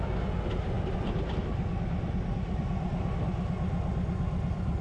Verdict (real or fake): real